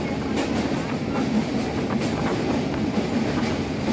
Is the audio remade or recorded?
recorded